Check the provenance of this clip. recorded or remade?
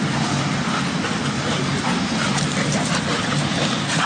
recorded